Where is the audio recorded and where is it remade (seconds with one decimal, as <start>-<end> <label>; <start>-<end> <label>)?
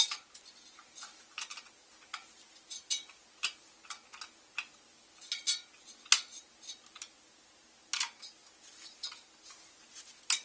0.0-10.4 recorded